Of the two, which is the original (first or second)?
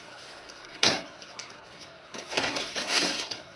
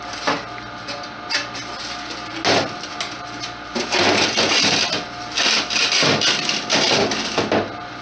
second